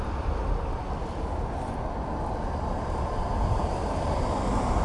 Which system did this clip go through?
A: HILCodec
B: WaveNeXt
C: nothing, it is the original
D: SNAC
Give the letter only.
C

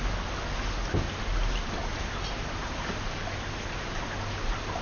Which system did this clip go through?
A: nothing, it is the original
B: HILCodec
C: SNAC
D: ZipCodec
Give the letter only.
A